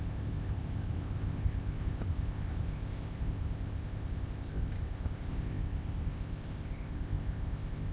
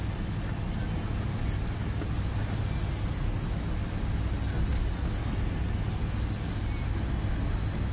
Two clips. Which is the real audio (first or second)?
second